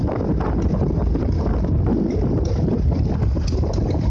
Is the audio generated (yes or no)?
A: no